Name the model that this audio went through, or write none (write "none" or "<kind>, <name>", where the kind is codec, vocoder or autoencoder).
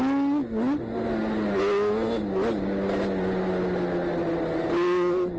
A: none